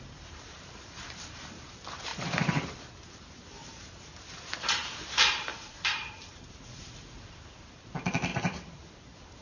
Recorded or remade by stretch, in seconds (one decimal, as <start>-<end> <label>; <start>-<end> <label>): 0.0-9.4 remade